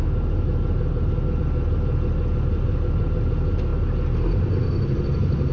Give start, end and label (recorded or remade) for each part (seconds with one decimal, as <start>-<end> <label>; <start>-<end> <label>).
0.0-5.5 recorded